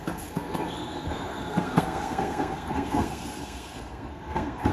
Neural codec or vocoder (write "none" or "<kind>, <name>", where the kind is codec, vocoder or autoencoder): codec, SNAC